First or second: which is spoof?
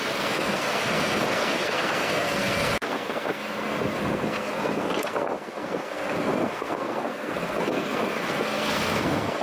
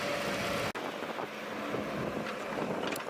first